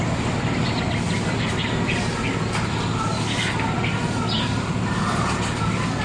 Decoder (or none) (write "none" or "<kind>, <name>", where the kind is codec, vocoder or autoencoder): none